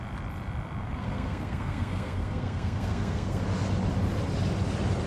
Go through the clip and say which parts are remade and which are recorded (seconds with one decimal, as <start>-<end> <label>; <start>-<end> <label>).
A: 0.0-0.8 recorded; 0.8-3.4 remade; 3.4-5.1 recorded